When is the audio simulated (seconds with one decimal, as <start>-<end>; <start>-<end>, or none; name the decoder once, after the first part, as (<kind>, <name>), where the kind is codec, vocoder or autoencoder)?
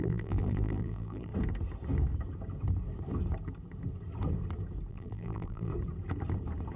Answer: 0.0-1.3 (vocoder, BigVGAN v2); 4.9-5.7